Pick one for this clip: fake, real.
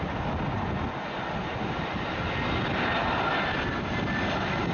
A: real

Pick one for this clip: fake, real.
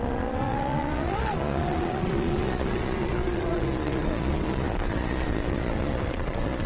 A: fake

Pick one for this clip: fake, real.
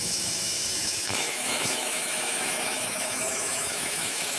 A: fake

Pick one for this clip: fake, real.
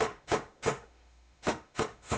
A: fake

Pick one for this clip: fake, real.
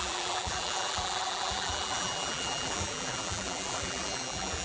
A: fake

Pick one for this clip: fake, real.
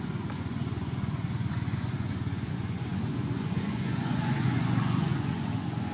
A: fake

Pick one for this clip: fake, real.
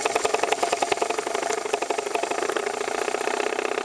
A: real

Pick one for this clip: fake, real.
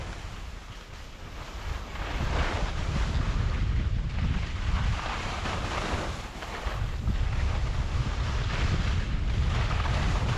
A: real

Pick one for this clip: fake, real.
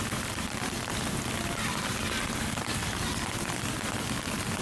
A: real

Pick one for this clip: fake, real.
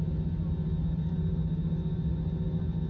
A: real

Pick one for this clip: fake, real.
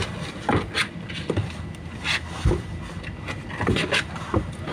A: real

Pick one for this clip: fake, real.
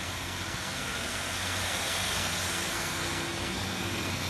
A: fake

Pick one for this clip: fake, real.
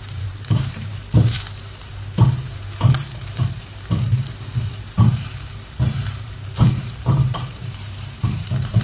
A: fake